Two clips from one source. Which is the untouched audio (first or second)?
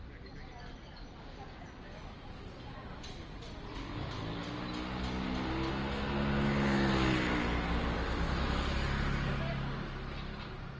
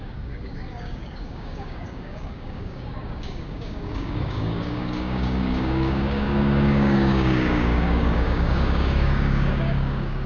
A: first